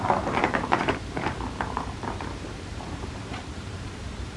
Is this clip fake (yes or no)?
yes